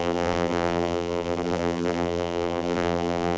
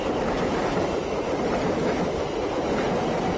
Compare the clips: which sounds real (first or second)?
second